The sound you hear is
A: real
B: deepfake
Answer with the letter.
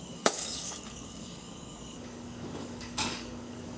B